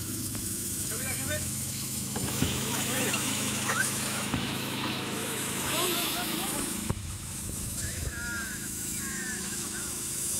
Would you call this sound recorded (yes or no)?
no